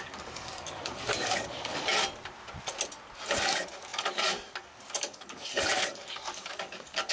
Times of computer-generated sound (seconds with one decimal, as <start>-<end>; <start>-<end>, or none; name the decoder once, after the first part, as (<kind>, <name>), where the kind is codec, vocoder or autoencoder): 0.0-2.0 (codec, DAC); 3.4-7.1